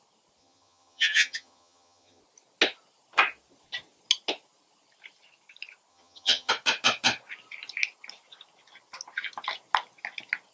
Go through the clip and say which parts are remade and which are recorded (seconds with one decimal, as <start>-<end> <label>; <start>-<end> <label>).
0.0-0.4 recorded; 0.4-2.2 remade; 2.2-5.9 recorded; 5.9-6.5 remade; 6.5-10.5 recorded